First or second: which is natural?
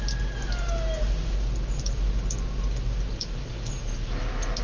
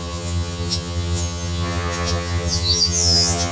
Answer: first